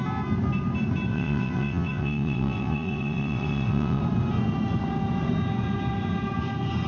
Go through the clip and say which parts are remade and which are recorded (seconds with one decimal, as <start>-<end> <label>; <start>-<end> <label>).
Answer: 0.0-1.1 recorded; 1.1-4.0 remade; 4.0-6.9 recorded